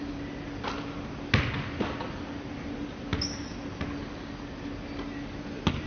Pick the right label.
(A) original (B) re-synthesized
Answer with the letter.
A